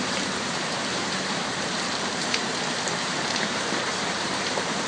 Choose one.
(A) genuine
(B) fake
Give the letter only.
B